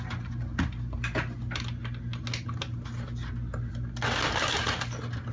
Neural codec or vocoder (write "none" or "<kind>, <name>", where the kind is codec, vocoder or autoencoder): none